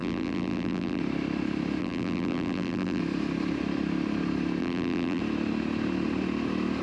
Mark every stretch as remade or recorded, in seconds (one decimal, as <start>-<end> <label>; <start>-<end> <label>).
0.0-1.0 remade; 1.0-1.8 recorded; 1.8-3.0 remade; 3.0-4.6 recorded; 4.6-5.2 remade; 5.2-6.8 recorded